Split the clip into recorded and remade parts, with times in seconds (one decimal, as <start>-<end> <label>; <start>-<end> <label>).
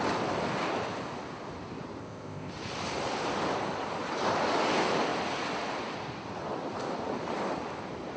0.0-2.0 recorded; 2.0-2.5 remade; 2.5-8.2 recorded